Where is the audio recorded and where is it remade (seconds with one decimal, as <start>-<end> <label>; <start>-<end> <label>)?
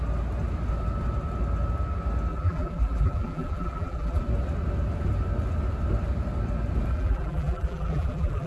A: 0.0-2.3 recorded; 2.3-4.2 remade; 4.2-6.9 recorded; 6.9-8.5 remade